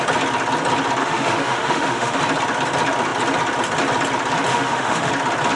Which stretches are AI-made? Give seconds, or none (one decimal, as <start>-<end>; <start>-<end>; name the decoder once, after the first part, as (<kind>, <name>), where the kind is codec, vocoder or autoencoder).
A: 1.0-2.2 (autoencoder, DAC-VAE); 4.5-5.1